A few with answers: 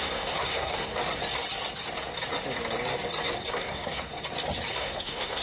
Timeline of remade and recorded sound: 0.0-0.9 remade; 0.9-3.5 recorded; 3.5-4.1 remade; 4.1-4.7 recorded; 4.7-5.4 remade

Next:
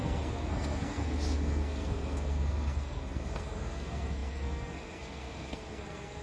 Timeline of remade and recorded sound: 0.0-6.2 remade

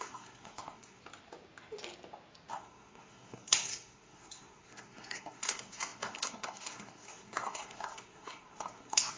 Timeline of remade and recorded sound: 0.0-1.0 remade; 1.0-2.5 recorded; 2.5-9.2 remade

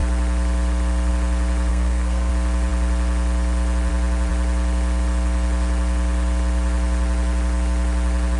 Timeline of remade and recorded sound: 0.0-1.7 recorded; 1.7-2.3 remade; 2.3-8.4 recorded

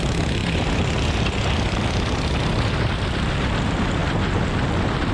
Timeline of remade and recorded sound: 0.0-5.1 recorded

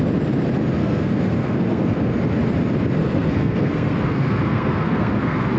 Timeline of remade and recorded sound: 0.0-0.8 recorded; 0.8-2.1 remade; 2.1-3.0 recorded; 3.0-5.6 remade